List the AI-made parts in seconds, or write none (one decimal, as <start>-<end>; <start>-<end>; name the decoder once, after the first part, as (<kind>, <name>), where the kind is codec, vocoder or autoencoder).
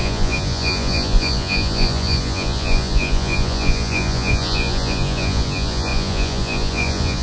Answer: 0.0-7.2 (vocoder, Vocos)